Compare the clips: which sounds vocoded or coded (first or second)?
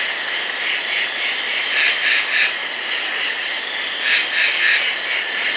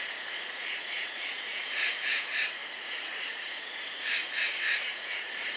second